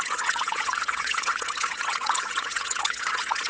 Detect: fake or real fake